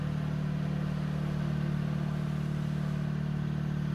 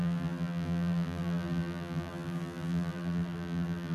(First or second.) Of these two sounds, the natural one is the first